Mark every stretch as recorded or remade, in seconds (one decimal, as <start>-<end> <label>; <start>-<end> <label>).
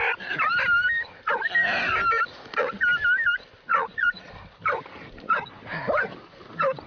0.0-2.3 recorded; 2.3-2.8 remade; 2.8-3.7 recorded; 3.7-4.3 remade; 4.3-6.9 recorded